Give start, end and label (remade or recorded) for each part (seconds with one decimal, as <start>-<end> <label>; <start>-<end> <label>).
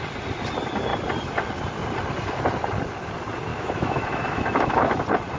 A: 0.0-3.5 recorded; 3.5-5.0 remade; 5.0-5.4 recorded